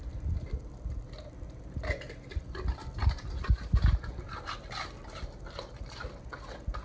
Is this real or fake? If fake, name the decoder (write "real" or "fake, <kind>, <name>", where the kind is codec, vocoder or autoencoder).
real